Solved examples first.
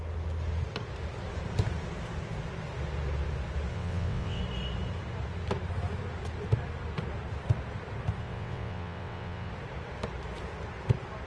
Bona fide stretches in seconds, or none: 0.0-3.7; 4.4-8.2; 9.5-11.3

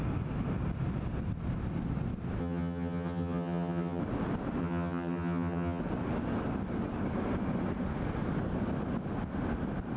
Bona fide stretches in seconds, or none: 0.0-2.4; 4.0-4.6; 5.8-10.0

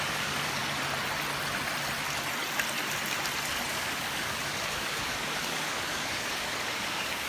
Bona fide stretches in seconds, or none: 0.6-3.7

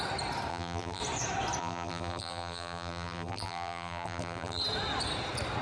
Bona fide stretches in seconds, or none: 0.0-0.5; 1.0-1.6; 4.6-5.6